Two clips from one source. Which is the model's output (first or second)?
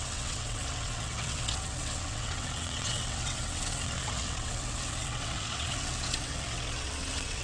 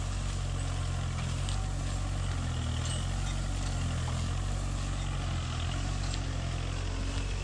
first